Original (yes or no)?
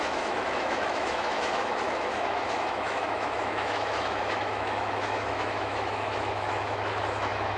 no